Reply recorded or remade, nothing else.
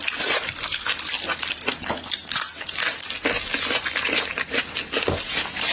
recorded